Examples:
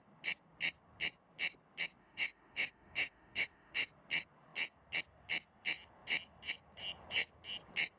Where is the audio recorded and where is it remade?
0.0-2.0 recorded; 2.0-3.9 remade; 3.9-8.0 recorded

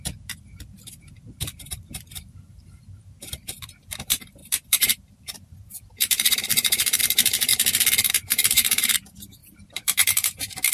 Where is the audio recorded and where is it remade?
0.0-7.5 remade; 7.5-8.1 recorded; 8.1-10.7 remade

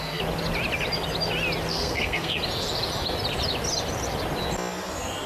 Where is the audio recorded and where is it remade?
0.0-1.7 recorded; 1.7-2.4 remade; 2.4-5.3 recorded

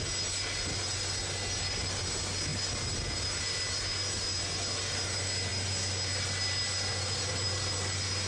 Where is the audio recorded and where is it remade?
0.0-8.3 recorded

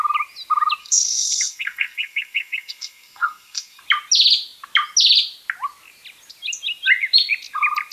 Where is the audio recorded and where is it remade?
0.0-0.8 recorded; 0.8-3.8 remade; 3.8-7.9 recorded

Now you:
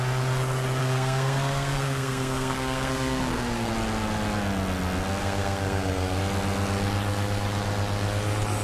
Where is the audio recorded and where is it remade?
0.0-0.8 recorded; 0.8-3.7 remade; 3.7-5.2 recorded; 5.2-6.2 remade; 6.2-8.6 recorded